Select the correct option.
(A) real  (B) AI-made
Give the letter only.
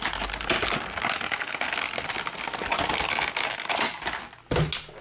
A